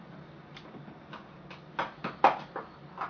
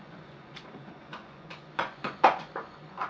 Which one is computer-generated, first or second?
second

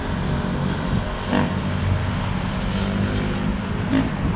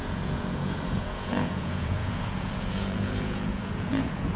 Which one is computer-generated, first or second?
second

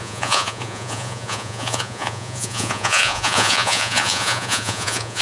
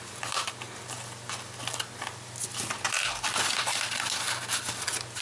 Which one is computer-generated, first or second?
first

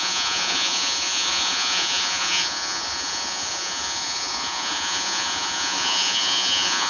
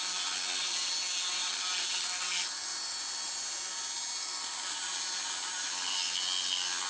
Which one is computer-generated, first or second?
first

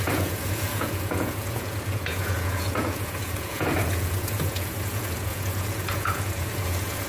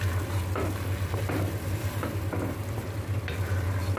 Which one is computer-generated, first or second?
first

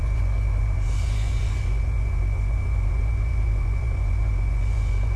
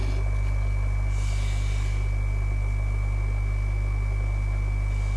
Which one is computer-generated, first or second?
first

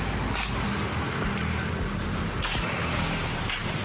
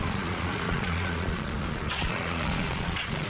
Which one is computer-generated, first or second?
second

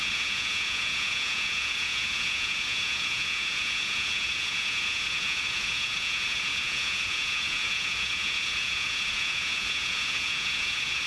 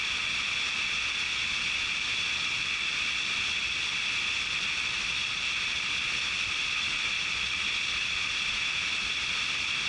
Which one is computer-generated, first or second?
first